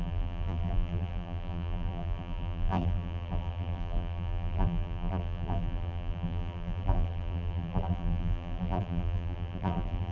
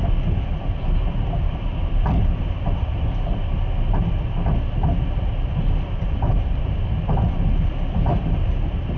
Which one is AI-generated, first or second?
first